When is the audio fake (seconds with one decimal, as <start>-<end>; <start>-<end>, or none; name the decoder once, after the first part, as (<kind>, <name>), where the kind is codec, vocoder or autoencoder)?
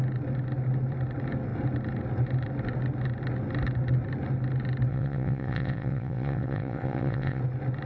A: 4.9-7.4 (vocoder, WaveNeXt)